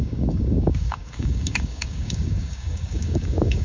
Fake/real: fake